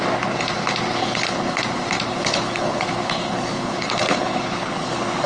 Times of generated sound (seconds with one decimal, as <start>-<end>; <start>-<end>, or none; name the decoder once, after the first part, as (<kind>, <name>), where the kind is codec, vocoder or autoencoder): 1.0-1.6 (codec, HILCodec); 2.1-5.3